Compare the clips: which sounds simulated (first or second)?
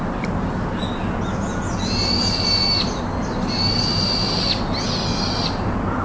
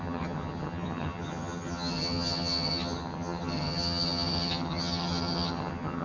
second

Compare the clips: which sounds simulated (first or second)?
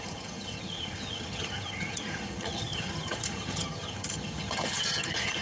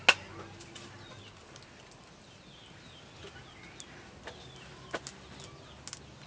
first